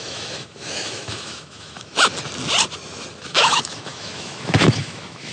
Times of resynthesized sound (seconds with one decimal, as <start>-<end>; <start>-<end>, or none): 0.0-2.1; 3.2-5.3